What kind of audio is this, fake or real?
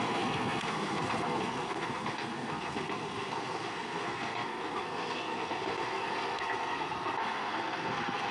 fake